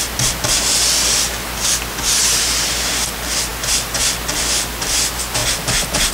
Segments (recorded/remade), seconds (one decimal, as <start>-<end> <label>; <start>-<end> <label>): 0.0-6.1 recorded